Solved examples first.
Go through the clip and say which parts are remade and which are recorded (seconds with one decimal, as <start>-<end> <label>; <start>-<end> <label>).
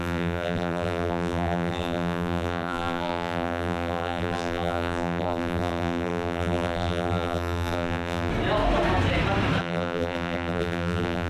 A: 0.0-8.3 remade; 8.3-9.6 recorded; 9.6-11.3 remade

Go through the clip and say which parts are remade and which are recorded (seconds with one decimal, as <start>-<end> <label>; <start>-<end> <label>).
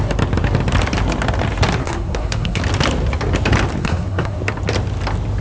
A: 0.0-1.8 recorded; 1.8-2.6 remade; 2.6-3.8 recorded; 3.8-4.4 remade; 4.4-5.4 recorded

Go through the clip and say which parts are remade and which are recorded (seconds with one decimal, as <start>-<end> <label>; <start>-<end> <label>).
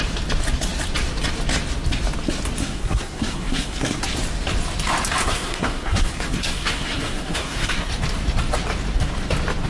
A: 0.0-2.6 recorded; 2.6-4.0 remade; 4.0-5.2 recorded; 5.2-7.9 remade; 7.9-9.7 recorded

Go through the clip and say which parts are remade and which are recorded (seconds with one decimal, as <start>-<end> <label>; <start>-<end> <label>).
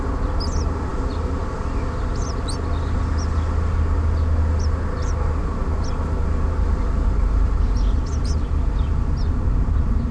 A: 0.0-10.1 recorded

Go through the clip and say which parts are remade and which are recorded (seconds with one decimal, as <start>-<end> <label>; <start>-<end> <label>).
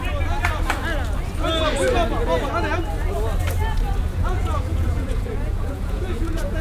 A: 0.0-4.0 recorded; 4.0-6.6 remade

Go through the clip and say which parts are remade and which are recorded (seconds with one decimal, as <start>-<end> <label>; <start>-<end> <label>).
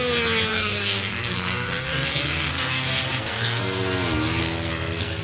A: 0.0-0.5 recorded; 0.5-3.6 remade; 3.6-4.4 recorded; 4.4-5.2 remade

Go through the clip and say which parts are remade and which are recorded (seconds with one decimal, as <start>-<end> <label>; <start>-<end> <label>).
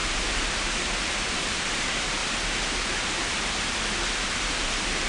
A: 0.0-1.3 recorded; 1.3-2.2 remade; 2.2-4.5 recorded; 4.5-5.1 remade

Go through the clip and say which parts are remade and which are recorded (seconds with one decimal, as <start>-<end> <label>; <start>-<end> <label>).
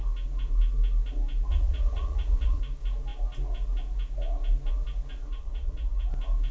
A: 0.0-1.5 recorded; 1.5-2.6 remade; 2.6-5.3 recorded; 5.3-6.1 remade; 6.1-6.5 recorded